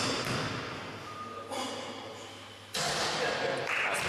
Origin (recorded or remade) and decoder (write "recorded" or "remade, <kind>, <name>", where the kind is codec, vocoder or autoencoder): recorded